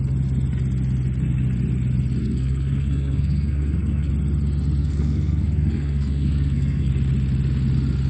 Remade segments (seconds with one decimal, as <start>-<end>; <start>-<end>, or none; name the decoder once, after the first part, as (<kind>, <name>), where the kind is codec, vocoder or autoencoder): 2.2-4.1 (codec, SNAC); 4.8-6.9